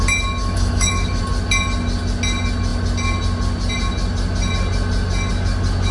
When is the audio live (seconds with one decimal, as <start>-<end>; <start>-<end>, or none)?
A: 0.0-0.4; 1.2-5.9